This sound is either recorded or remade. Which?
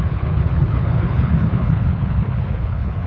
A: remade